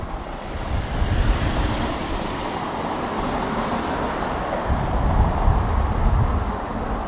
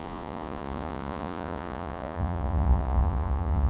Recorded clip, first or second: first